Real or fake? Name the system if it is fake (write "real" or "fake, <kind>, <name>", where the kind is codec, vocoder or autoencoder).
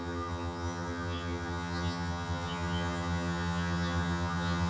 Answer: fake, vocoder, HiFi-GAN